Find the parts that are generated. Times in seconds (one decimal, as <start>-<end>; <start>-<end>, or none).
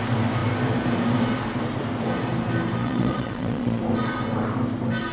2.8-3.8